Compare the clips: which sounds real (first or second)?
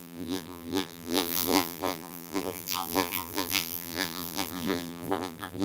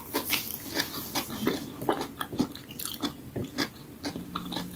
second